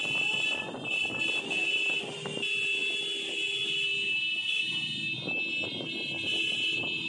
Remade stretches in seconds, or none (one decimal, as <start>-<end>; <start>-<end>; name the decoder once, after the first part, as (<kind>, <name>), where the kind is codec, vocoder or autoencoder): none